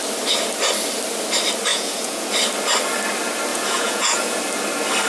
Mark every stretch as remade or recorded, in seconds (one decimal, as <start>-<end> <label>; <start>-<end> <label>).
0.0-1.7 recorded; 1.7-2.3 remade; 2.3-3.5 recorded; 3.5-4.4 remade; 4.4-5.1 recorded